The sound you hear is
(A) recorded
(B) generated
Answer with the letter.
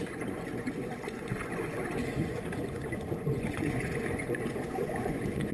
B